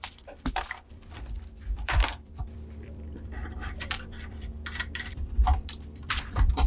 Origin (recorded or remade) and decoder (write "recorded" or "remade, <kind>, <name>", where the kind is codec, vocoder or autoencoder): remade, vocoder, BigVGAN v2